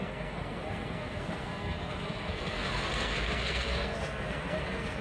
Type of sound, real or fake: fake